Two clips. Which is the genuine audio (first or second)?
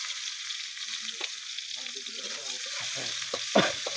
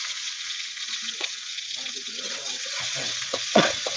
first